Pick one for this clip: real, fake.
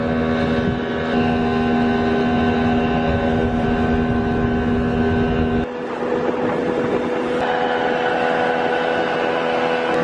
real